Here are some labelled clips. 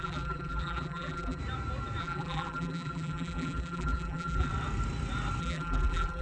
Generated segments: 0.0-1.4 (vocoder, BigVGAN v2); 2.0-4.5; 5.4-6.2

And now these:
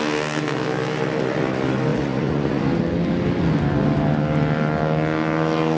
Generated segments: 1.9-2.6 (vocoder, Vocos)